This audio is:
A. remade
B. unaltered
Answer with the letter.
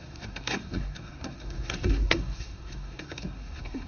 A